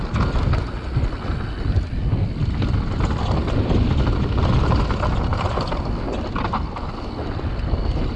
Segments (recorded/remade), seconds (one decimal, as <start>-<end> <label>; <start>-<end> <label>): 0.0-8.2 recorded